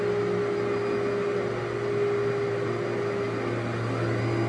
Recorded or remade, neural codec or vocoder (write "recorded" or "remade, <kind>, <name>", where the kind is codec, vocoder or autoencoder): recorded